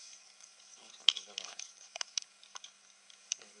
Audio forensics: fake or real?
fake